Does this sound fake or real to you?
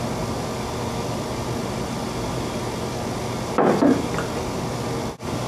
real